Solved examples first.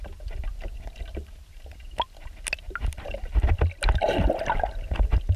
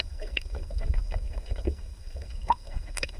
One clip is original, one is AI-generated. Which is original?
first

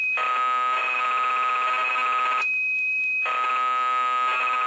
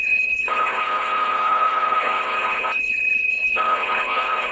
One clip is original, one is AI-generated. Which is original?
first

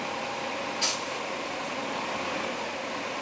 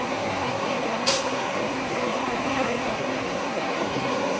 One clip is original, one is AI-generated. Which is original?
first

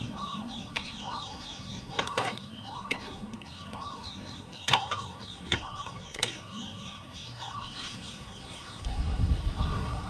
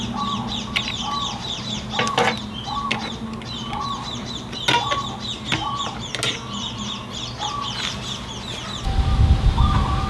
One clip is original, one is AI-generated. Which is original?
second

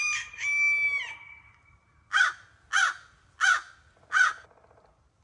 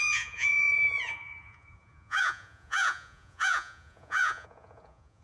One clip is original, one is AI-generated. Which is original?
first